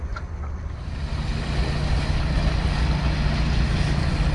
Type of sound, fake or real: real